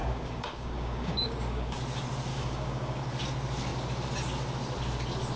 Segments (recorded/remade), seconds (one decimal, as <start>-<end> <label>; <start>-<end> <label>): 0.0-1.8 remade; 1.8-2.3 recorded; 2.3-3.0 remade; 3.0-5.4 recorded